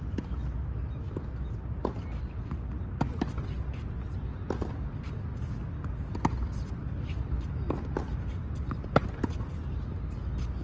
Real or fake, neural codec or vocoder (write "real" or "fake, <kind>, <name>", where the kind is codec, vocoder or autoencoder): real